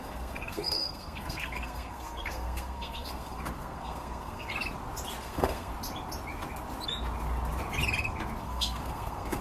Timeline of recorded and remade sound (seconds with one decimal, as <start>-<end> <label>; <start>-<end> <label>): 0.0-4.5 remade; 4.5-5.2 recorded; 5.2-5.7 remade; 5.7-8.4 recorded; 8.4-9.4 remade

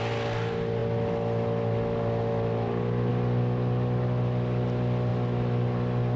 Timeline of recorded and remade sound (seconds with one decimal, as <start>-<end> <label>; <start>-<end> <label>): 0.0-6.2 recorded

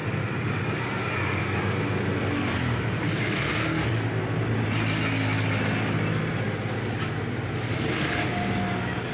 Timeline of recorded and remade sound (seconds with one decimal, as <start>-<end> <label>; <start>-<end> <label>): 0.0-9.1 recorded

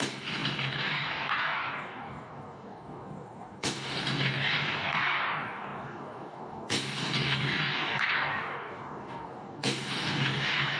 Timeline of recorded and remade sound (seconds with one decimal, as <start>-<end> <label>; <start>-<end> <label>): 0.0-10.8 remade

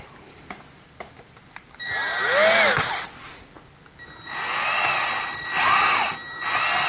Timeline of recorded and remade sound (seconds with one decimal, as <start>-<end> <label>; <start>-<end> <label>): 0.0-6.9 recorded